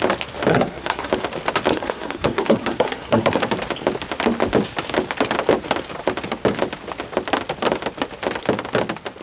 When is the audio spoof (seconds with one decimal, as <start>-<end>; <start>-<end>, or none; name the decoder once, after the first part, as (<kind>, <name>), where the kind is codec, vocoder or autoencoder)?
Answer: 0.5-1.1 (codec, SNAC); 1.7-3.4